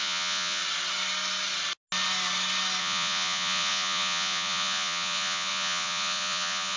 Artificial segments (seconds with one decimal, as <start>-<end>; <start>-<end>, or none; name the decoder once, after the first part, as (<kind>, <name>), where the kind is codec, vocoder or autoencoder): 0.0-0.6 (vocoder, Vocos); 2.8-6.8